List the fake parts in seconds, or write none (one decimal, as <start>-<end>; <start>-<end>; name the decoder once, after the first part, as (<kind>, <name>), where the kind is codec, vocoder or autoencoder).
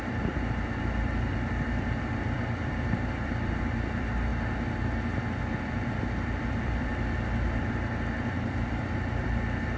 0.0-4.3 (vocoder, BigVGAN v2); 5.6-6.9; 7.6-9.8